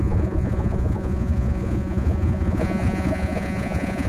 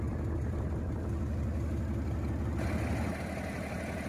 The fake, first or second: first